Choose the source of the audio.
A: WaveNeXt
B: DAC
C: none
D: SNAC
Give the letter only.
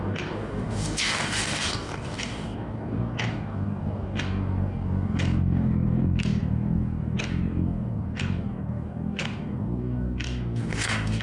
B